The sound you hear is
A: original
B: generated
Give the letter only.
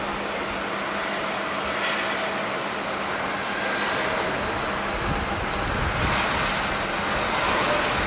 A